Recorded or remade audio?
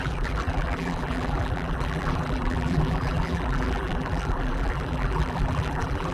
remade